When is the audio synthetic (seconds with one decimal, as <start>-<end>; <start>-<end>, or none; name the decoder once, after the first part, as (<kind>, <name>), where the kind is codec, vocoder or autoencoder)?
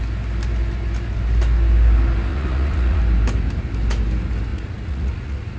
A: 2.3-3.0 (vocoder, Vocos); 4.5-5.6